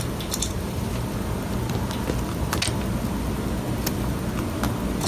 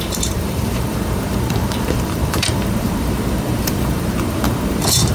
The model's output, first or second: second